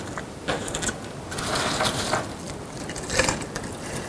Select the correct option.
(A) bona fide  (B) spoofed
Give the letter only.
A